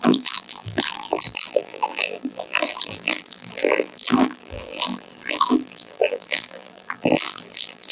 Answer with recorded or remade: remade